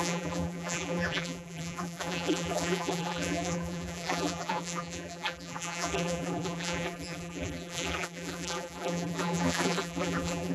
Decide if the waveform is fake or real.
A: fake